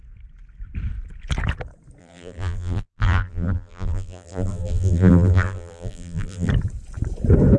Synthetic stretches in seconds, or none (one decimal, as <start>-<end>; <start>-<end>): 2.0-6.5